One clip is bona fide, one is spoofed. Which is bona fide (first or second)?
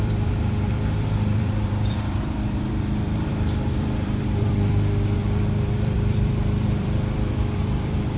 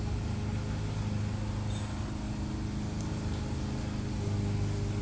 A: second